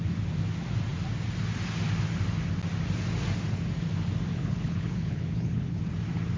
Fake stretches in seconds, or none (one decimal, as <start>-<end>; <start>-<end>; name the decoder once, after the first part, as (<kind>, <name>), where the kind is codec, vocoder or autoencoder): 4.3-5.8 (codec, HILCodec)